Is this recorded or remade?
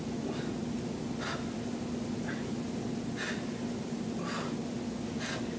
recorded